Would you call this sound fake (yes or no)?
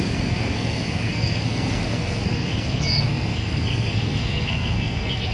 yes